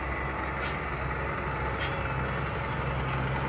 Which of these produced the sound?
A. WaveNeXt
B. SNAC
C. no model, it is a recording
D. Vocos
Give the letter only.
C